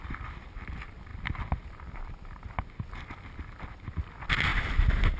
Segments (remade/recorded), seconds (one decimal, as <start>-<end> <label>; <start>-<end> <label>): 0.0-5.2 recorded

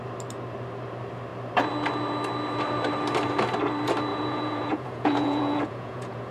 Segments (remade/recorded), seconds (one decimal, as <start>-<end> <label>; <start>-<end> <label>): 0.0-4.1 recorded; 4.1-6.3 remade

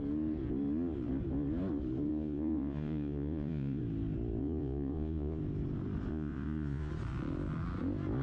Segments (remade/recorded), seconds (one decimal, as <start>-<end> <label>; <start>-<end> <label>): 0.0-2.1 recorded; 2.1-3.8 remade; 3.8-4.4 recorded; 4.4-5.4 remade; 5.4-6.1 recorded; 6.1-6.9 remade; 6.9-8.2 recorded

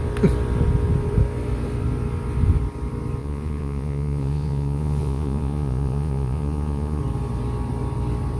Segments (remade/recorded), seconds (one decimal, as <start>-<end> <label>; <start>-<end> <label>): 0.0-3.2 recorded; 3.2-7.0 remade; 7.0-8.4 recorded

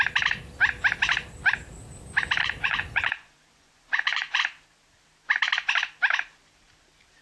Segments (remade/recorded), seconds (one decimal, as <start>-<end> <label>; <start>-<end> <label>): 0.0-2.4 recorded; 2.4-4.4 remade; 4.4-7.2 recorded

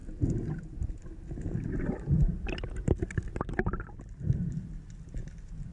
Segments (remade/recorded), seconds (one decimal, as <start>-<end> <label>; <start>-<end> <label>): 0.0-5.7 recorded